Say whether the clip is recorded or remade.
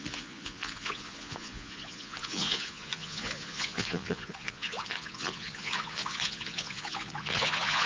remade